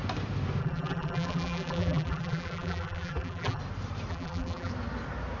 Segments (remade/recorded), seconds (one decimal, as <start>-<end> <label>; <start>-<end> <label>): 0.0-0.6 recorded; 0.6-3.6 remade; 3.6-4.1 recorded; 4.1-4.7 remade; 4.7-5.4 recorded